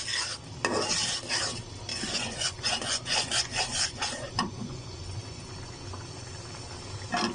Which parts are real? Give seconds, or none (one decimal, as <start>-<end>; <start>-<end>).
0.0-1.9; 6.3-7.3